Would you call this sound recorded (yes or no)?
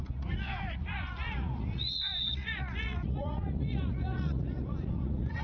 no